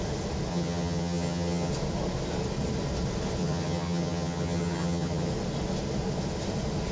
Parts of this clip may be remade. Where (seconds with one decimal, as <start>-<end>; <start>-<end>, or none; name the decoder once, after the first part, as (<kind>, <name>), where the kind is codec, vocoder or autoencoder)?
0.5-1.7 (vocoder, HiFi-GAN); 3.4-5.3